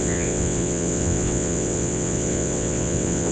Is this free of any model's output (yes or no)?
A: no